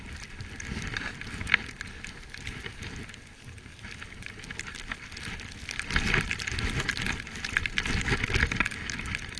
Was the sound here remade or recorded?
recorded